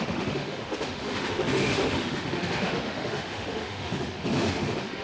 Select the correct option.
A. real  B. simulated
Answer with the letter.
B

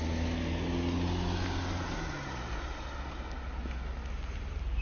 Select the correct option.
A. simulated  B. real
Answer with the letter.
B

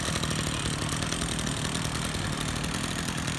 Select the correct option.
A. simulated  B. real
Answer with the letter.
B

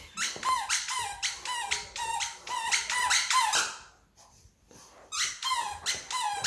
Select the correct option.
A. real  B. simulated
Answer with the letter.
B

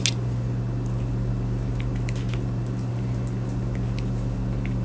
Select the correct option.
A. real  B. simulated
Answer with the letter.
A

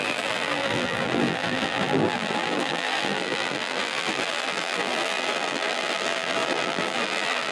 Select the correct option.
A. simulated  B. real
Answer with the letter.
A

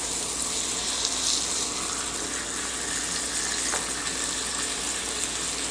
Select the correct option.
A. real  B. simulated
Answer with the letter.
A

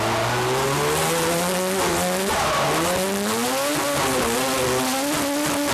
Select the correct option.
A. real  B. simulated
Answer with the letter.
A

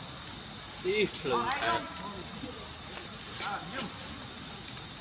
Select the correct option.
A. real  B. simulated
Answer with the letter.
A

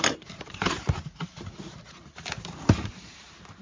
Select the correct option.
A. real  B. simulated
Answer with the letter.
B